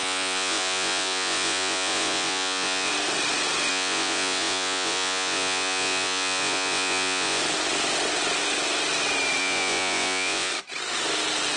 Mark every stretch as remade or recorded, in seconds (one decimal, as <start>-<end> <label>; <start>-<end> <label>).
0.0-2.9 remade; 2.9-3.7 recorded; 3.7-7.4 remade; 7.4-9.4 recorded; 9.4-10.5 remade; 10.5-11.6 recorded